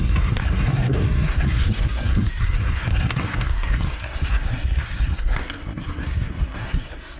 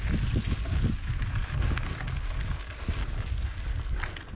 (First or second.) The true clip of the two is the second